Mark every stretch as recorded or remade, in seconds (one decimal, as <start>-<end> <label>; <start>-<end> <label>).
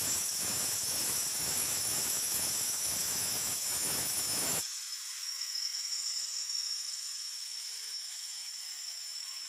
0.0-9.5 remade